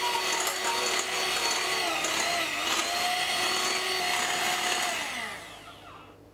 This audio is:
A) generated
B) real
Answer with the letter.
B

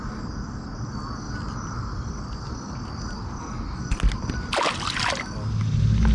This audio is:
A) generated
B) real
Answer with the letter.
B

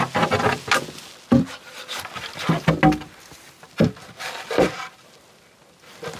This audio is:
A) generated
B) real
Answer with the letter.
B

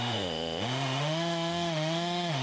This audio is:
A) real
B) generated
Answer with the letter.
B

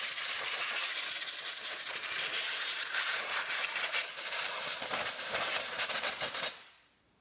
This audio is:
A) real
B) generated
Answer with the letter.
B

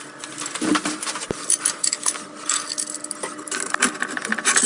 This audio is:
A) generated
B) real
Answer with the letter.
B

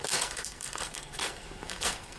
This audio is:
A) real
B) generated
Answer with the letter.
B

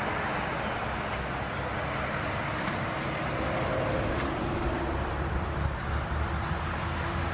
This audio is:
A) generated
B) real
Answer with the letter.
B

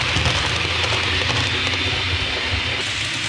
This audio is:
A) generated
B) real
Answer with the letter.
B